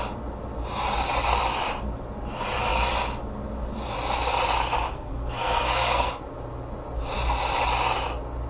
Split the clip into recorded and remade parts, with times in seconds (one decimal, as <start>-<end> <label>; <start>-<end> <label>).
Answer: 0.0-4.9 recorded; 4.9-6.3 remade; 6.3-8.5 recorded